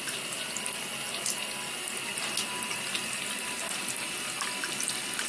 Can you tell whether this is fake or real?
real